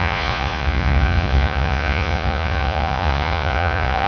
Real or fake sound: fake